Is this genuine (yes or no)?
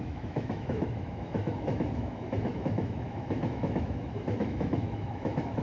no